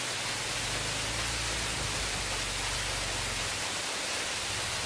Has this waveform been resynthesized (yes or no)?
no